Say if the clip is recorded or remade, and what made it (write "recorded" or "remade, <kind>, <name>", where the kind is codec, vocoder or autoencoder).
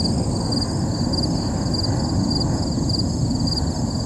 recorded